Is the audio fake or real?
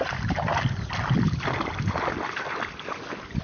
real